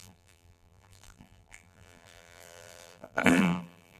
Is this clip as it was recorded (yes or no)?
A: no